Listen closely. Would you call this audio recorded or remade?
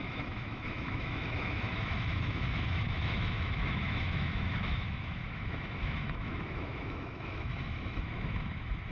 remade